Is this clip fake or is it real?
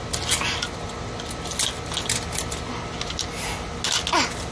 real